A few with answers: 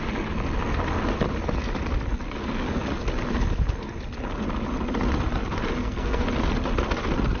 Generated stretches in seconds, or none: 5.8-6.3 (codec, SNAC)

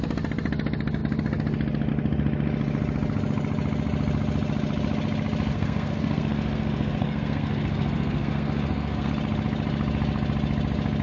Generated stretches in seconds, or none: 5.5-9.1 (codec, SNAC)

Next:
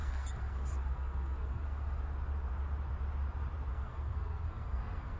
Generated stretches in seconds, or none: 0.0-2.0 (codec, SNAC); 3.7-5.2

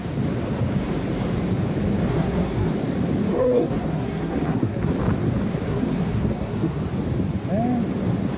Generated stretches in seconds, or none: 2.1-2.7 (codec, SNAC); 3.3-4.9; 5.5-6.8

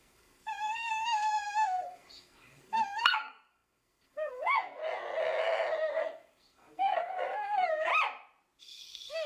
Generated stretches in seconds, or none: 0.0-4.8 (codec, SNAC); 5.9-7.9; 8.6-9.3

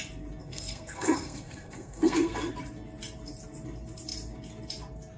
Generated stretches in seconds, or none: 0.4-2.5 (codec, SNAC)

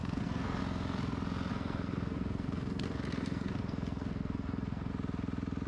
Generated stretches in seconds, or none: 0.0-0.6 (codec, SNAC); 1.5-4.9